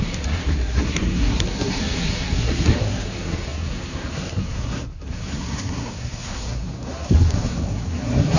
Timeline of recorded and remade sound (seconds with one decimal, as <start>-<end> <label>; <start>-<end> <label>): 0.0-8.4 remade